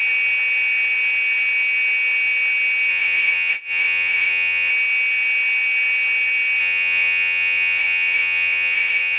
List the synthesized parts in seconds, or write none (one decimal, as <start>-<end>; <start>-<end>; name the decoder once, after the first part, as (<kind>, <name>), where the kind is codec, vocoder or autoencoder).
2.9-4.7 (vocoder, Vocos); 6.6-9.2